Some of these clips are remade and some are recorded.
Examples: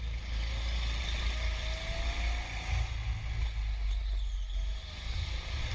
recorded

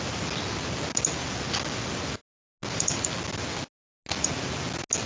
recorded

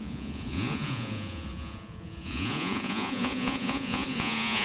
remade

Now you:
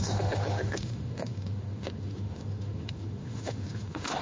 remade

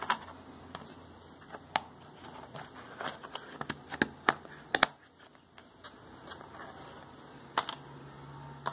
recorded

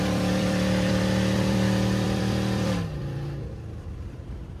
remade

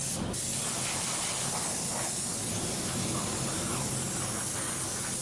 recorded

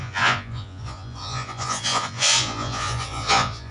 remade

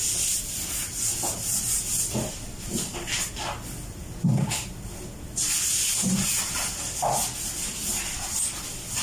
recorded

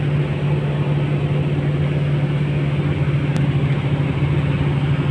recorded